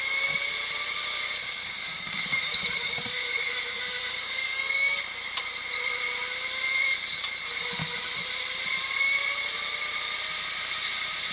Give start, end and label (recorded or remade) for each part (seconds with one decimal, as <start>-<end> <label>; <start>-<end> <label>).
0.0-1.4 recorded; 1.4-5.0 remade; 5.0-11.3 recorded